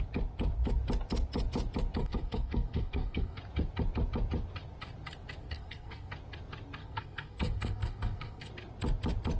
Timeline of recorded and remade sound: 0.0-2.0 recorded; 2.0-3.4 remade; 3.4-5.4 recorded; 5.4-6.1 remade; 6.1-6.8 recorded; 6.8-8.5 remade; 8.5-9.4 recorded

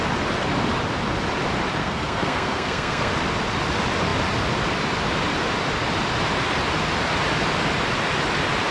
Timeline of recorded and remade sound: 0.0-1.8 recorded; 1.8-3.1 remade; 3.1-8.7 recorded